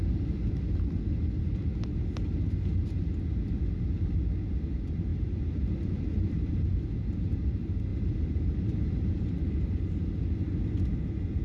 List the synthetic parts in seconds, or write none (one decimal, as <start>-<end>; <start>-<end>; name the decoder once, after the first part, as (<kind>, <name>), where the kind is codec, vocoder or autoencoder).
5.1-7.5 (vocoder, BigVGAN v2); 7.9-9.2